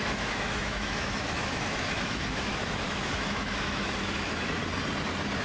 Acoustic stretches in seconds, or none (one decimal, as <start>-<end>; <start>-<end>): 4.6-5.4